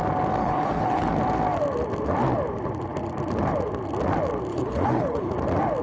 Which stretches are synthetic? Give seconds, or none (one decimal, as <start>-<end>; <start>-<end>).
0.4-1.1; 4.5-5.3